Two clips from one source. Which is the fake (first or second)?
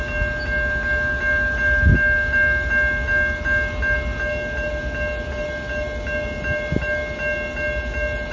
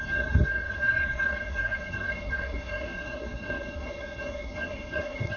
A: second